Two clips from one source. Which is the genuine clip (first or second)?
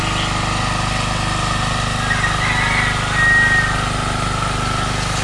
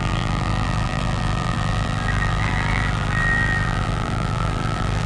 first